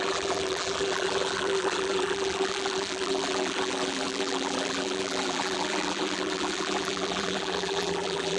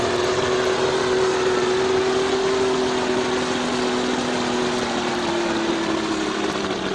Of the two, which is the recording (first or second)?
second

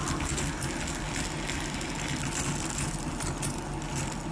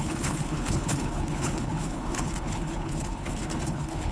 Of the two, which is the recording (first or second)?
first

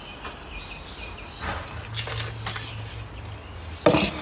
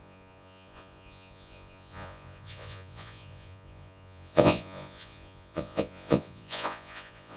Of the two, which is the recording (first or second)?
first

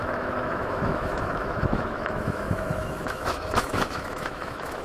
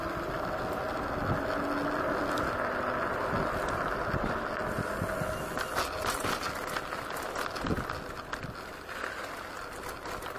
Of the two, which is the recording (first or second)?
second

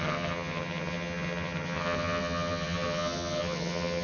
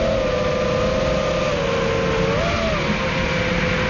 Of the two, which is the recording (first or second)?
second